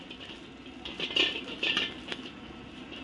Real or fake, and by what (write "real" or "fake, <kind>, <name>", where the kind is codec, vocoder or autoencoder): real